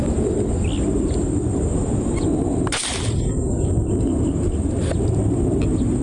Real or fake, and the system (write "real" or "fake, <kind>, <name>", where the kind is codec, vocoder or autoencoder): real